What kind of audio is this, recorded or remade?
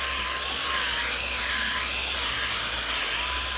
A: recorded